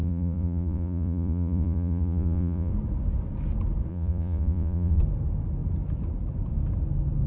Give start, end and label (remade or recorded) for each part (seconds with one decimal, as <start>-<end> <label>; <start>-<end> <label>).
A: 0.0-2.7 remade; 2.7-3.9 recorded; 3.9-5.0 remade; 5.0-7.3 recorded